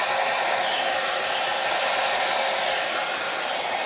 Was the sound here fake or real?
real